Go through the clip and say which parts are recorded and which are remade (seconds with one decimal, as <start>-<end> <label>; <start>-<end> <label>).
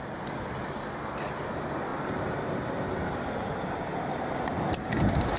0.0-5.4 recorded